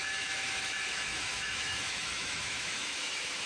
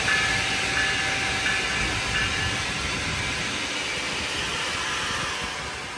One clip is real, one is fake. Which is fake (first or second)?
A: first